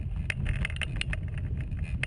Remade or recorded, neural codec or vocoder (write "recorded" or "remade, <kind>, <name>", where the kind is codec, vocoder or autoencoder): recorded